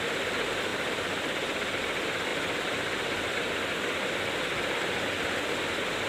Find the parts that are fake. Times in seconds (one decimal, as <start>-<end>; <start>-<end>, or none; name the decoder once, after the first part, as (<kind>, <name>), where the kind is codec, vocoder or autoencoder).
0.7-1.8 (vocoder, BigVGAN v2)